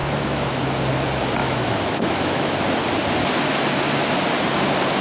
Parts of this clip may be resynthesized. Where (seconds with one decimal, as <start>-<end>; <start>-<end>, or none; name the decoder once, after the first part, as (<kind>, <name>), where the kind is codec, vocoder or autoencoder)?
0.0-0.7 (autoencoder, DAC-VAE); 1.4-2.6